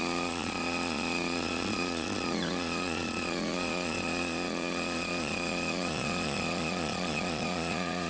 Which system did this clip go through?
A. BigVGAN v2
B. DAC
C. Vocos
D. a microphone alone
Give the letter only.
C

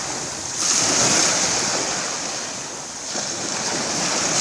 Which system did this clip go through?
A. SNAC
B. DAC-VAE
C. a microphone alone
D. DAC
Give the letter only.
C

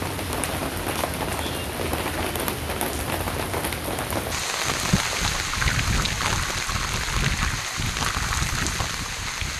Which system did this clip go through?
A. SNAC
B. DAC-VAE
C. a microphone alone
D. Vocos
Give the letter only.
C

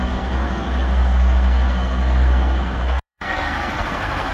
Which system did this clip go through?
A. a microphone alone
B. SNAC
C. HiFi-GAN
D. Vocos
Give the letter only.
B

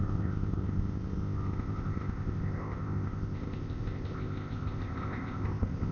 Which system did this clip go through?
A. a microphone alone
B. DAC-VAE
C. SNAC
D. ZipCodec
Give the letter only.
D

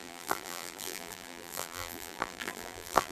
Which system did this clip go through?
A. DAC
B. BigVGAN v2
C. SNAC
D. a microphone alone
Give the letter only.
B